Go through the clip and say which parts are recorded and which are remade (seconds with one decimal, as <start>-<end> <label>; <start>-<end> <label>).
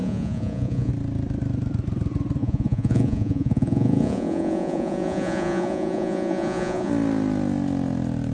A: 0.0-0.9 remade; 0.9-2.4 recorded; 2.4-6.9 remade; 6.9-8.3 recorded